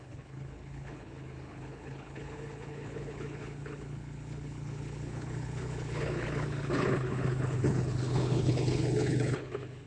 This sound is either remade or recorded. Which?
remade